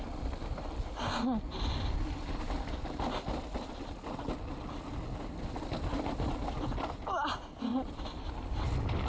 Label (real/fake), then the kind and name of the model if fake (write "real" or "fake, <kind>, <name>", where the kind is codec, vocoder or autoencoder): real